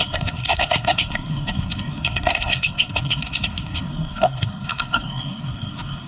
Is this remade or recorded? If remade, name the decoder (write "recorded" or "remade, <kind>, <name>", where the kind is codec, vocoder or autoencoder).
remade, codec, SNAC